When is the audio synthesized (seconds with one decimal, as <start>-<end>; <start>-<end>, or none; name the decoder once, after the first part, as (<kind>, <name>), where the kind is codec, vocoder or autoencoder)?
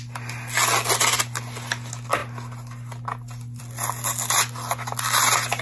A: none